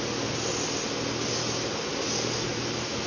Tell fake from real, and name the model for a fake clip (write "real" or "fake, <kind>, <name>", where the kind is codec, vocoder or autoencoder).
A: real